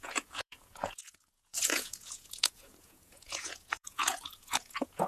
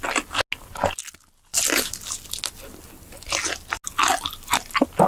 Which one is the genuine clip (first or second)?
second